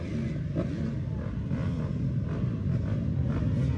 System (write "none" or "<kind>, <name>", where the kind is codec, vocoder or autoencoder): none